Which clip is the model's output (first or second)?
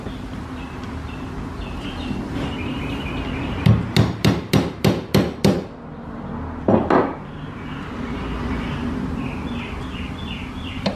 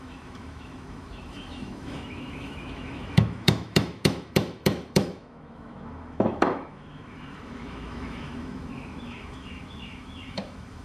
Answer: second